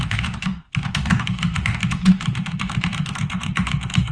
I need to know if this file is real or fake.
fake